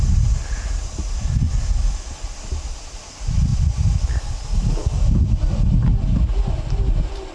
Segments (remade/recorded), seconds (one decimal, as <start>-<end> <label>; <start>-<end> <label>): 0.0-7.3 recorded